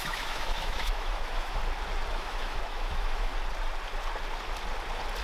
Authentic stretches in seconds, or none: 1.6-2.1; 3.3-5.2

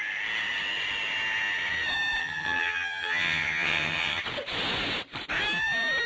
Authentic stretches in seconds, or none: 0.0-2.2; 4.2-6.1

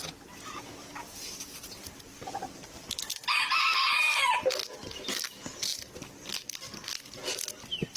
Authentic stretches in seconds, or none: 0.0-8.0

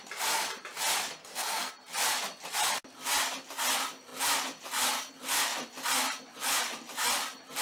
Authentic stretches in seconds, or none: 0.0-1.2; 1.7-7.6

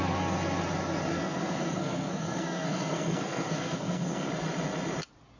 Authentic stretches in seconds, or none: 0.0-1.1; 4.3-5.4

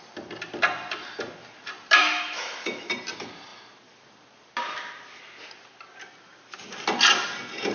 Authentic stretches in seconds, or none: 0.0-2.0; 2.9-7.7

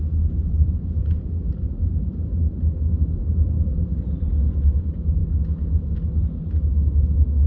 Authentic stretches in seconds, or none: 0.0-7.5

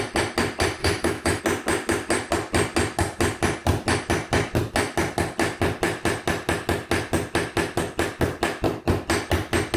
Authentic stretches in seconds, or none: 0.0-0.8; 1.4-9.8